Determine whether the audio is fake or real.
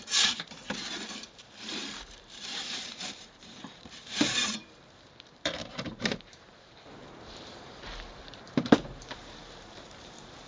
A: fake